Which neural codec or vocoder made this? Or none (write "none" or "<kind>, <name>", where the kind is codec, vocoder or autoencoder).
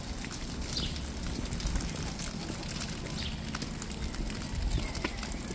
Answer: none